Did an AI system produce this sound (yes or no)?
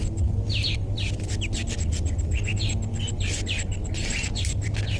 no